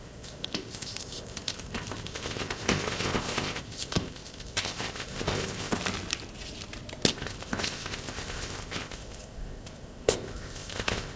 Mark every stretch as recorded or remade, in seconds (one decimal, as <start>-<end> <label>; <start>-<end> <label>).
0.0-5.8 remade; 5.8-7.1 recorded; 7.1-11.2 remade